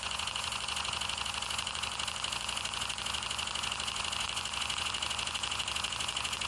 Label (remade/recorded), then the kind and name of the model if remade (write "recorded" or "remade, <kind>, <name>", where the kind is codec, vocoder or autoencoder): remade, vocoder, Vocos